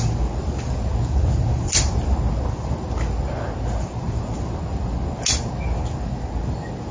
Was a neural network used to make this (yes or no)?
no